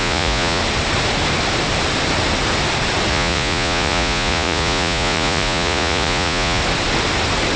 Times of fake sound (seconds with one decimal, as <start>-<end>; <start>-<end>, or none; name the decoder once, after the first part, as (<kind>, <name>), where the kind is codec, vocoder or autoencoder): 0.0-0.6 (vocoder, Vocos); 3.1-6.6